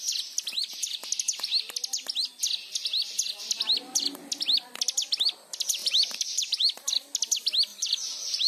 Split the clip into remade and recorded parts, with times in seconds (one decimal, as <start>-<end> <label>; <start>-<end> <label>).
0.0-5.8 recorded; 5.8-6.9 remade; 6.9-7.7 recorded; 7.7-8.5 remade